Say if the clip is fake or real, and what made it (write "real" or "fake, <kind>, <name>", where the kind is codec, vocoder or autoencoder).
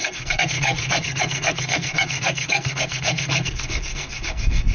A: fake, codec, SNAC